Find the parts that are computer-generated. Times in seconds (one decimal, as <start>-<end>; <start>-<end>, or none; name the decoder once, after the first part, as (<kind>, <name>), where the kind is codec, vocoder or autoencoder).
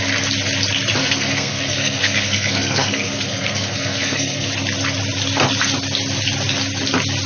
1.0-4.5 (codec, SNAC)